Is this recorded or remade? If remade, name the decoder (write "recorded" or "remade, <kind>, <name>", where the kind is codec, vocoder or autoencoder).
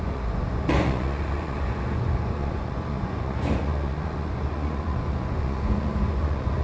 remade, vocoder, Vocos